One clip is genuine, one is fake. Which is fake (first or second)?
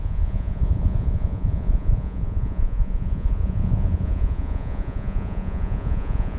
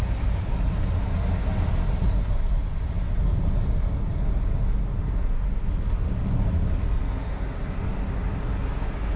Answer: first